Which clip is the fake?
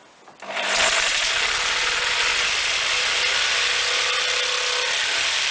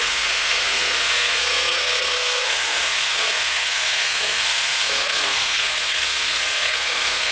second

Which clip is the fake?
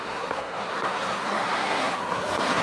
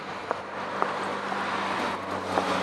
first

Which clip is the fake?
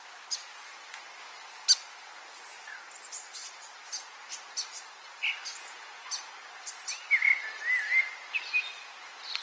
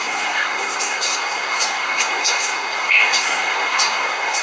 second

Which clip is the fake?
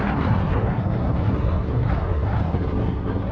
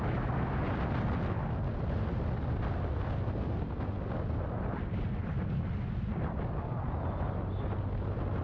first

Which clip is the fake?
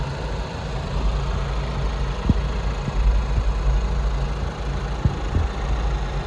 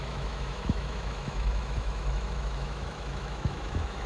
second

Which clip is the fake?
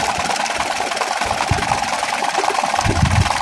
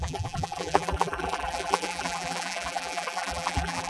second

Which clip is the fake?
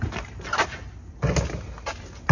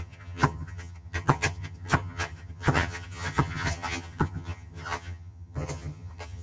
second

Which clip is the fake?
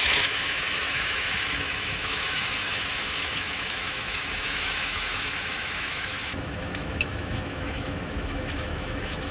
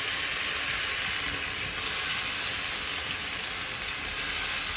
first